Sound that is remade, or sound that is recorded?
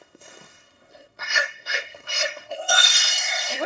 remade